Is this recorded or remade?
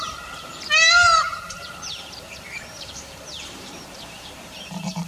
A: remade